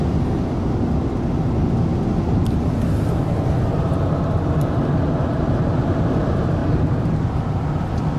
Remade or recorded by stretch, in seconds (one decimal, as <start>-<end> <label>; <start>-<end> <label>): 0.0-6.6 recorded; 6.6-7.7 remade; 7.7-8.2 recorded